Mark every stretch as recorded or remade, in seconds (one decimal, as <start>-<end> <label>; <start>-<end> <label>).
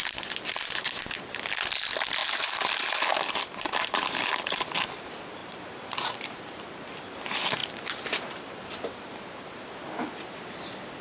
0.0-5.4 recorded; 5.4-6.8 remade; 6.8-7.6 recorded; 7.6-9.7 remade; 9.7-11.0 recorded